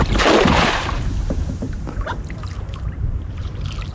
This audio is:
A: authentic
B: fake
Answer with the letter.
B